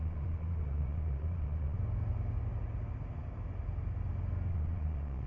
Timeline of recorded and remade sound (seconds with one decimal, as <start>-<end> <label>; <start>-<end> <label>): 0.0-1.8 remade; 1.8-4.5 recorded; 4.5-5.3 remade